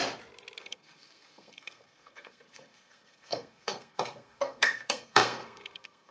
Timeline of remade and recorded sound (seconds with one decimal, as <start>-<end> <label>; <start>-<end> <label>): 0.0-0.6 recorded; 0.6-6.1 remade